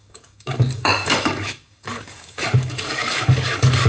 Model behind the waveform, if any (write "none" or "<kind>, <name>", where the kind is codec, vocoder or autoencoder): codec, DAC